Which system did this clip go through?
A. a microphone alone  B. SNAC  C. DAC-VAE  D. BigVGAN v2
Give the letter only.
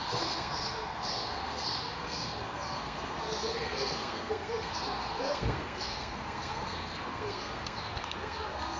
B